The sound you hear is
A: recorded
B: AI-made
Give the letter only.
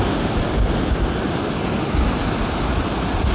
A